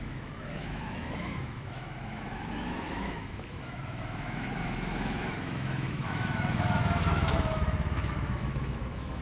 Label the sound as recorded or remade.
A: remade